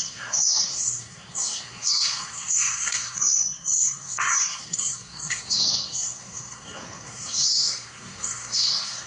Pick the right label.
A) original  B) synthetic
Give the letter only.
B